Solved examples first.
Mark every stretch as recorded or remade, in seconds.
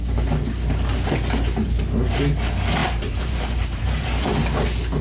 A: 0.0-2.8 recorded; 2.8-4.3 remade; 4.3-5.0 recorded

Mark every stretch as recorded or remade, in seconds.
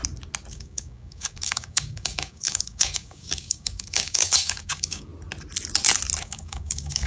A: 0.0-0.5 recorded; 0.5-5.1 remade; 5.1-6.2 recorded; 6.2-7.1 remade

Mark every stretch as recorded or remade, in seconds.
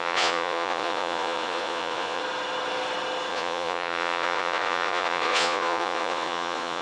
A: 0.0-2.2 remade; 2.2-3.3 recorded; 3.3-6.8 remade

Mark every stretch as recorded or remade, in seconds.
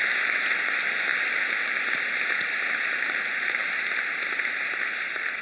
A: 0.0-5.4 recorded